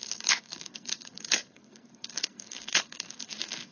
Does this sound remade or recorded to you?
remade